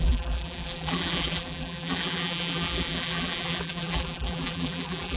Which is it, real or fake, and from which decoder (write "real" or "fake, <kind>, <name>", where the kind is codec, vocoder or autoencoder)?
fake, vocoder, BigVGAN v2